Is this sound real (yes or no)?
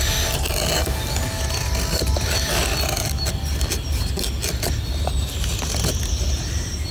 yes